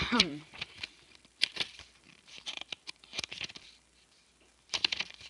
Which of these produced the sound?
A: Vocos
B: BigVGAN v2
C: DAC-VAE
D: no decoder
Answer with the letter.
B